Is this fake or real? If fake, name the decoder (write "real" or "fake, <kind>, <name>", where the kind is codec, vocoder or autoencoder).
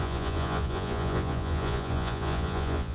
fake, vocoder, Vocos